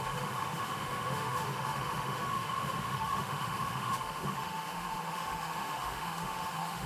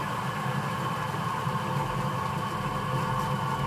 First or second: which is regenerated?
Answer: first